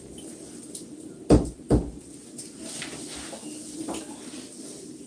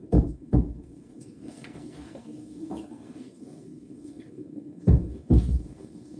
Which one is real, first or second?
first